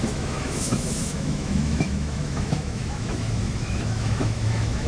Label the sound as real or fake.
fake